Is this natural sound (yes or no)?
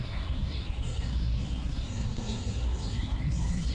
no